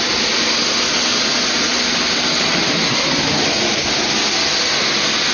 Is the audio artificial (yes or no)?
no